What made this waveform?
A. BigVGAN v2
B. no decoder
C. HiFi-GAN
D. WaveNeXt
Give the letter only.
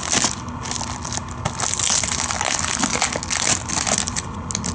B